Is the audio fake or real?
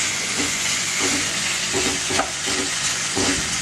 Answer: fake